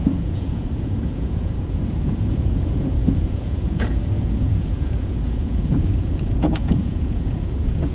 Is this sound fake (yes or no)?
yes